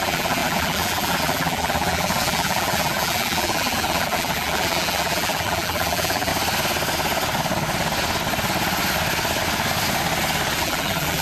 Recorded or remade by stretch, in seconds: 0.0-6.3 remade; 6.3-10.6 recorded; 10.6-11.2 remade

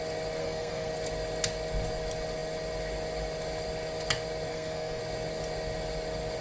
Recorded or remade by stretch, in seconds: 0.0-0.4 recorded; 0.4-0.9 remade; 0.9-4.5 recorded; 4.5-5.0 remade; 5.0-6.4 recorded